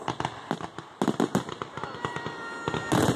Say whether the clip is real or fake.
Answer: real